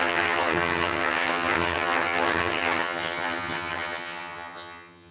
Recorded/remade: remade